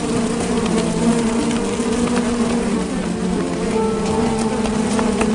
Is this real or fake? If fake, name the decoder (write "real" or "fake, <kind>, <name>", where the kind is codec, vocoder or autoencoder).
real